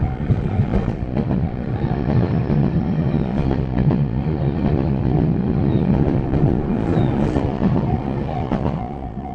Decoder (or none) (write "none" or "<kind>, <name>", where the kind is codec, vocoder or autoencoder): vocoder, Vocos